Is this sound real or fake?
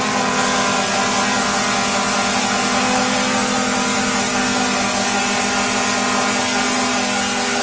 real